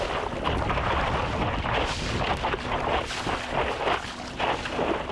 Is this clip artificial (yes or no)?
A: no